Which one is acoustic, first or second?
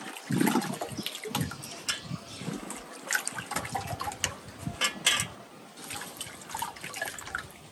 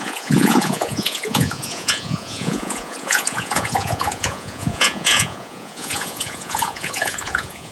first